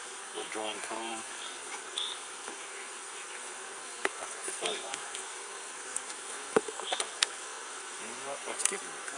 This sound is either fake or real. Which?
fake